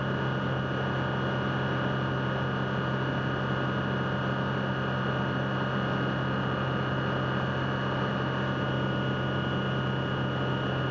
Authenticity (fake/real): real